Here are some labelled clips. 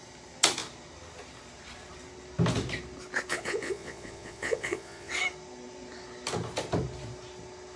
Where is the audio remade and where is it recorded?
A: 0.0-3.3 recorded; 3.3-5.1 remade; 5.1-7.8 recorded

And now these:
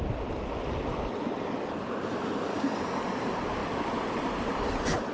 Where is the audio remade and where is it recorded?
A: 0.0-2.5 recorded; 2.5-3.0 remade; 3.0-5.1 recorded